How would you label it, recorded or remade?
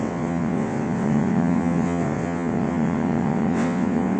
remade